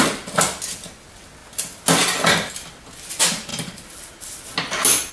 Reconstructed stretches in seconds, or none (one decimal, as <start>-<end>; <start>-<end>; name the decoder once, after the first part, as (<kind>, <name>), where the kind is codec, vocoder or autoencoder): none

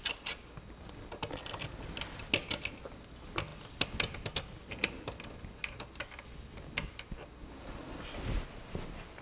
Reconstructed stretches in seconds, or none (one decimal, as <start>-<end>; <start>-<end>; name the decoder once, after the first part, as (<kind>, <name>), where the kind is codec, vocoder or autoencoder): none

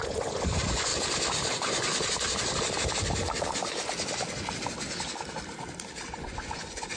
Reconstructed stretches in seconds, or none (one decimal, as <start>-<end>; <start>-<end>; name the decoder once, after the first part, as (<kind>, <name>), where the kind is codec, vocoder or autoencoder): 0.0-0.9 (vocoder, Vocos); 1.5-1.9; 6.1-7.0

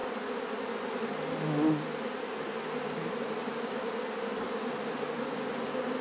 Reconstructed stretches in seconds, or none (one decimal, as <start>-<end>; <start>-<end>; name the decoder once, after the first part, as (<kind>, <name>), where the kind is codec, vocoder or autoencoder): 3.4-4.3 (vocoder, BigVGAN v2)

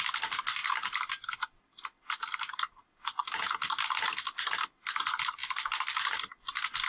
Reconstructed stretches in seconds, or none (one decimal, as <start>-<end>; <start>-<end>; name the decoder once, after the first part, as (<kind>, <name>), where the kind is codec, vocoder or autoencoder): none